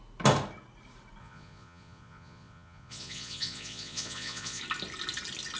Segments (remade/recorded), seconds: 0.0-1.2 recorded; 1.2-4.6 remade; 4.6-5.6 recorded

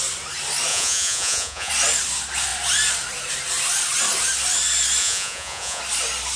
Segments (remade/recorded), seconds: 0.0-0.7 recorded; 0.7-1.7 remade; 1.7-5.0 recorded; 5.0-5.8 remade; 5.8-6.4 recorded

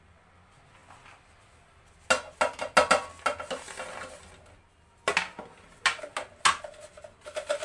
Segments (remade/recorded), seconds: 0.0-7.6 recorded